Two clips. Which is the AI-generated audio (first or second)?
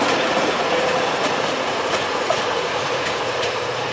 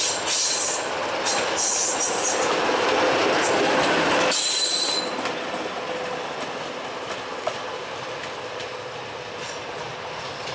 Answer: first